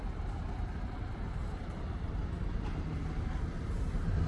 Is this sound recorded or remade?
recorded